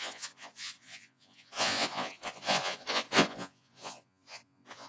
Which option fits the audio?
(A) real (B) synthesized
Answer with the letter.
B